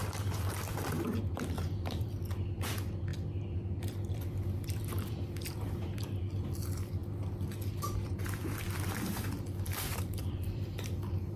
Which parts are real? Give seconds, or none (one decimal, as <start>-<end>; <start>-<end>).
3.1-3.8; 7.0-7.9